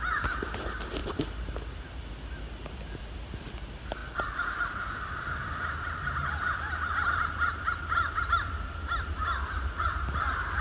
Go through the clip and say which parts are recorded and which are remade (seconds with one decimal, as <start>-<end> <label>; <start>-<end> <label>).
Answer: 0.0-1.0 remade; 1.0-2.7 recorded; 2.7-10.6 remade